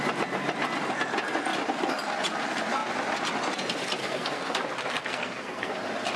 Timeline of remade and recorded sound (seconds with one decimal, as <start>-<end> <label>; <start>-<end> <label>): 0.0-4.0 recorded; 4.0-4.6 remade; 4.6-5.0 recorded; 5.0-5.7 remade; 5.7-6.2 recorded